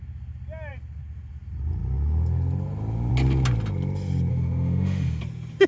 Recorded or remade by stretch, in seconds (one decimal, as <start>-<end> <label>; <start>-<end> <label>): 0.0-4.3 recorded; 4.3-5.2 remade; 5.2-5.7 recorded